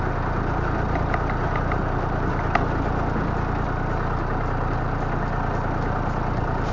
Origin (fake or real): real